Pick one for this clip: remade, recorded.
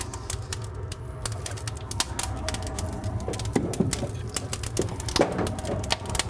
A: recorded